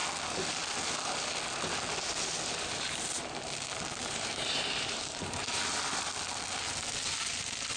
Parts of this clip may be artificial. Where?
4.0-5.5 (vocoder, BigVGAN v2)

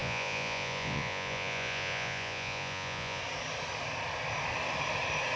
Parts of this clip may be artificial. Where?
0.0-3.2 (vocoder, Vocos)

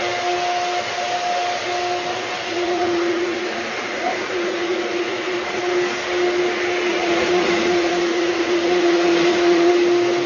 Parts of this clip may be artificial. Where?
2.1-5.6 (vocoder, Vocos); 6.9-9.7

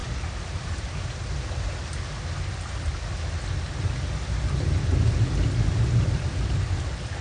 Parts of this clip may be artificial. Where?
none